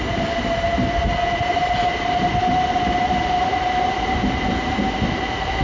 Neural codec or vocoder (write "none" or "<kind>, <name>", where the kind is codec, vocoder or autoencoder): none